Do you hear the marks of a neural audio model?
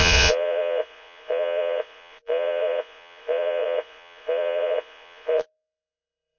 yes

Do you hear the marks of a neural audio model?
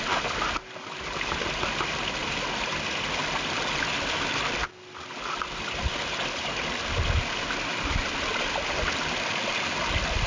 no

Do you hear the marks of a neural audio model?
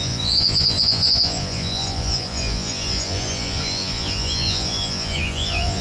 yes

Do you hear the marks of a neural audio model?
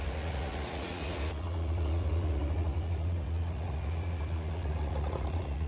yes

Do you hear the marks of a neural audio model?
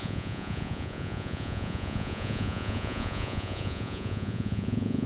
yes